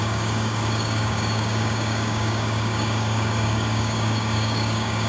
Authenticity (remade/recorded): remade